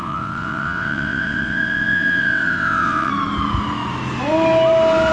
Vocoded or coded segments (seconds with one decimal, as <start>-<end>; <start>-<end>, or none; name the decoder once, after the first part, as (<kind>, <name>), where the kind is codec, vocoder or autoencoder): 0.0-3.1 (vocoder, WaveNeXt)